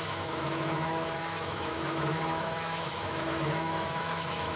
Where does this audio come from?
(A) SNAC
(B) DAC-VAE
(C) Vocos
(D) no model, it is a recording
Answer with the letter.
B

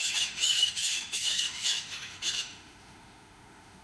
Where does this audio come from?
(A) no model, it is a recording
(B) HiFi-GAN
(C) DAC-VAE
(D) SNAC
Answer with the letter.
C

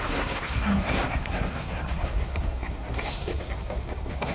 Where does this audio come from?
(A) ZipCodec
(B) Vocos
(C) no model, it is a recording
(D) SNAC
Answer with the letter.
D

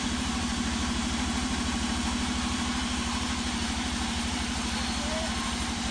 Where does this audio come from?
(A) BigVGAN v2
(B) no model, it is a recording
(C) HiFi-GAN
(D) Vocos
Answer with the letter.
A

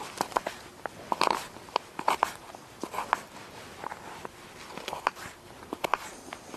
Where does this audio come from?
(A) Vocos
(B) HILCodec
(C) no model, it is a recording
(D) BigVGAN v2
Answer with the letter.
C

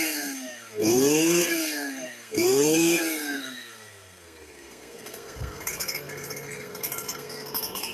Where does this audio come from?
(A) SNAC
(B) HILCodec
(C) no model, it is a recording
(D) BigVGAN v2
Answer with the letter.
A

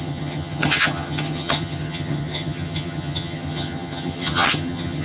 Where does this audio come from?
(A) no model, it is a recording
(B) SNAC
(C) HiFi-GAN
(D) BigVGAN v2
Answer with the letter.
C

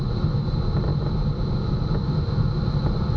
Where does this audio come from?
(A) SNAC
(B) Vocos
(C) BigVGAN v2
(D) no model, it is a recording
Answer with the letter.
D